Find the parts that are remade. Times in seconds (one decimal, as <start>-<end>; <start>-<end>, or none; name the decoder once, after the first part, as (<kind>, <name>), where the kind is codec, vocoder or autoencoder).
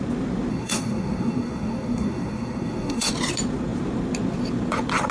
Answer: 0.5-3.1 (codec, SNAC)